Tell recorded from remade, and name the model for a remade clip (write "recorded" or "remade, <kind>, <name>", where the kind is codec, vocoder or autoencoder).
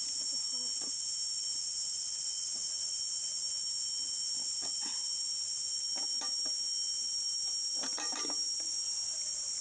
recorded